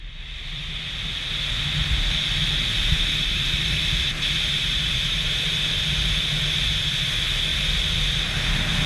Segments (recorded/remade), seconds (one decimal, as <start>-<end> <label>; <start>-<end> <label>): 0.0-2.7 recorded; 2.7-7.1 remade; 7.1-7.5 recorded; 7.5-8.2 remade; 8.2-8.9 recorded